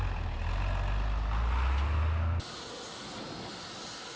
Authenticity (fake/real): real